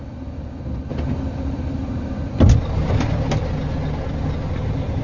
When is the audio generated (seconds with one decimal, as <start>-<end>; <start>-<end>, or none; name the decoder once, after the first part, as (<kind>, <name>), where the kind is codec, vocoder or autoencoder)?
none